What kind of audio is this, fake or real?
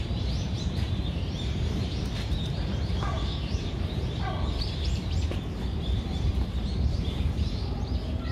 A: fake